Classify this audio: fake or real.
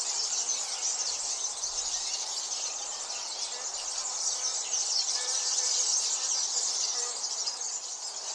real